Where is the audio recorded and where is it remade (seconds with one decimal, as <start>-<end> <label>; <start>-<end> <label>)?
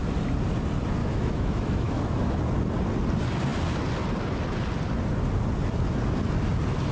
0.0-1.0 recorded; 1.0-2.4 remade; 2.4-6.9 recorded